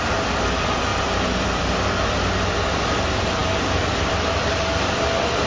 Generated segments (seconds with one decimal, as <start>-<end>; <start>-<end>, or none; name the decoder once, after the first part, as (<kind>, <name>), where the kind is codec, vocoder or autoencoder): 0.0-5.5 (vocoder, BigVGAN v2)